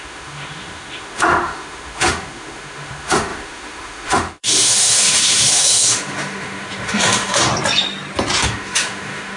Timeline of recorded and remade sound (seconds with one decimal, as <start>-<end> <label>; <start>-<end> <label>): 0.0-7.5 remade; 7.5-8.4 recorded; 8.4-9.4 remade